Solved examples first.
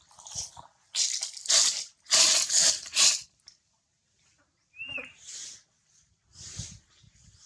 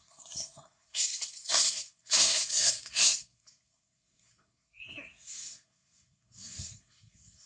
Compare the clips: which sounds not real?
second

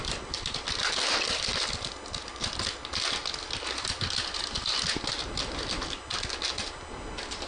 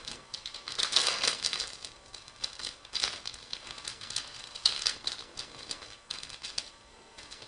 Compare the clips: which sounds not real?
second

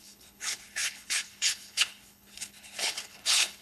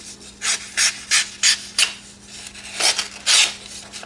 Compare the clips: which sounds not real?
first